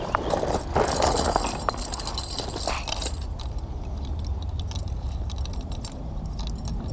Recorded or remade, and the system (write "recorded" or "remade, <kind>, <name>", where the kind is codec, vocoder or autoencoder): recorded